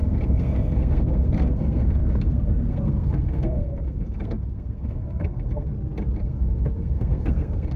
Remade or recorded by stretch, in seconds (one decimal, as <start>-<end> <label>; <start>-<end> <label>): 0.0-5.7 remade; 5.7-6.2 recorded; 6.2-7.8 remade

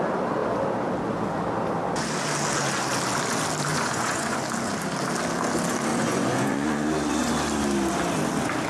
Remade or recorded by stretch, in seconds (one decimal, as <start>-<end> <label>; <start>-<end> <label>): 0.0-3.7 recorded; 3.7-4.4 remade; 4.4-5.9 recorded; 5.9-7.3 remade; 7.3-8.7 recorded